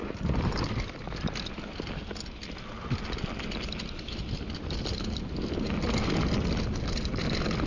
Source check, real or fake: real